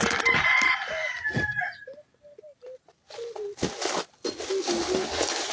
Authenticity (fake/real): real